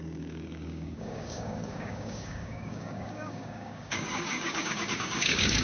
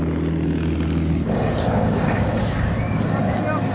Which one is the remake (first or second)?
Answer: first